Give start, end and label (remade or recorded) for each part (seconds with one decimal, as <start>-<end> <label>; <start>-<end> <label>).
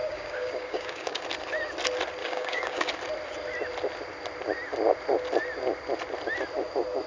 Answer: 0.0-1.2 remade; 1.2-2.2 recorded; 2.2-2.9 remade; 2.9-7.1 recorded